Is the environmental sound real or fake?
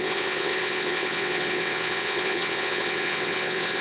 fake